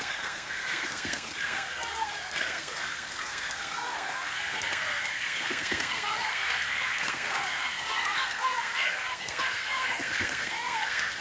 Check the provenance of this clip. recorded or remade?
remade